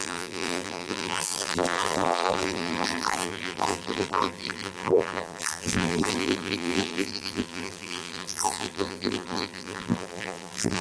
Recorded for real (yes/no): no